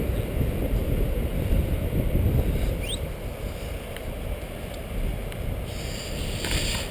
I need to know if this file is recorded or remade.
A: recorded